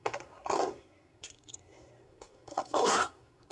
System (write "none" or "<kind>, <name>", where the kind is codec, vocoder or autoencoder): codec, SNAC